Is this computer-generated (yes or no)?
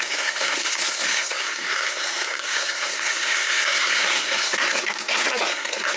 yes